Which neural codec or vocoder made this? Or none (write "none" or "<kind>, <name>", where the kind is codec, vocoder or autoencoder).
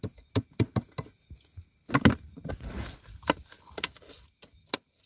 none